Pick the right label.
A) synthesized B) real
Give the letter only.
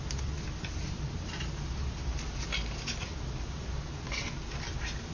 B